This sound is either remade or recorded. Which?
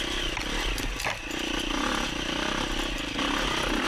recorded